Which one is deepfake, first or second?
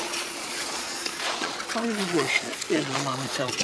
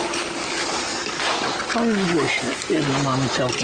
first